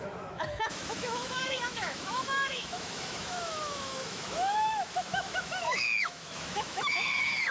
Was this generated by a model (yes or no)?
yes